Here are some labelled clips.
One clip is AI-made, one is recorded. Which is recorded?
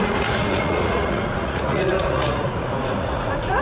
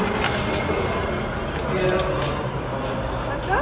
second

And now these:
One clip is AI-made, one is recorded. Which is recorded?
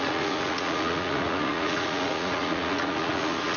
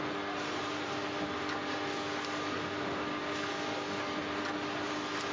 second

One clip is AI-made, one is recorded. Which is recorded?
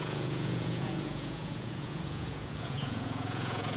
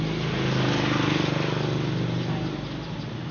second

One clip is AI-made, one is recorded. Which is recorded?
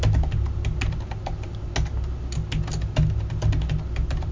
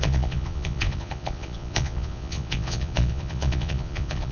first